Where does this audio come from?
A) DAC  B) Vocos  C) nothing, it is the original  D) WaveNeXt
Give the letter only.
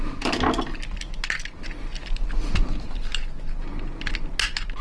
C